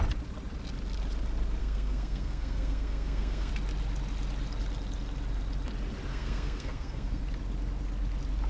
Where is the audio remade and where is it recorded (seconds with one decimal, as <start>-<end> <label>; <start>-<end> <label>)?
0.0-1.6 recorded; 1.6-3.5 remade; 3.5-6.1 recorded; 6.1-7.2 remade; 7.2-8.5 recorded